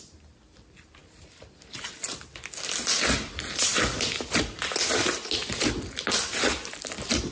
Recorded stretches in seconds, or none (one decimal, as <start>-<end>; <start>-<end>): 0.0-7.3